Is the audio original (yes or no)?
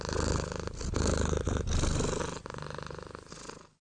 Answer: yes